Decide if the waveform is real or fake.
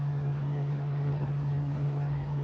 fake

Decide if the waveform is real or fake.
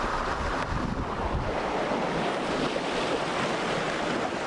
real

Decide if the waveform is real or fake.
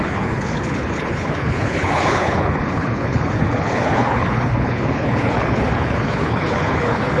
fake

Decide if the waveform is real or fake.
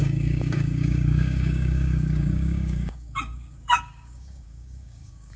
fake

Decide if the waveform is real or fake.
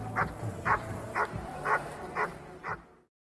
real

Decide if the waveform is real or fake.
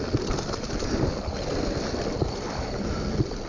real